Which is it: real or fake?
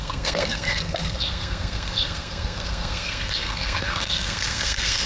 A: fake